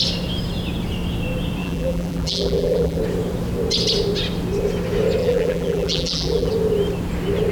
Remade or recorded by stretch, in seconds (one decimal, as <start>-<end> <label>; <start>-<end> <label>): 0.0-1.6 recorded; 1.6-3.0 remade; 3.0-5.2 recorded; 5.2-6.5 remade; 6.5-7.5 recorded

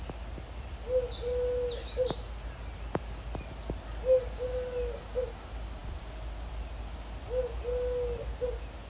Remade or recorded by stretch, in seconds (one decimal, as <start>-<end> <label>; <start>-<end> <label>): 0.0-8.9 recorded

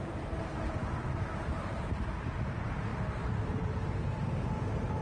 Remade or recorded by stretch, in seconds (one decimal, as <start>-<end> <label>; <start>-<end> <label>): 0.0-5.0 remade

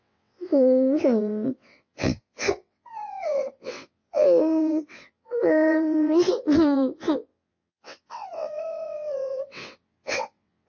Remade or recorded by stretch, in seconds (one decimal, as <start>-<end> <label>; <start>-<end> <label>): 0.0-10.7 remade

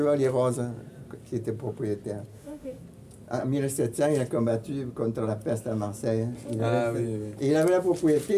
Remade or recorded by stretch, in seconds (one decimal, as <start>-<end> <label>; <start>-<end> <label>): 0.0-2.3 recorded; 2.3-2.8 remade; 2.8-8.4 recorded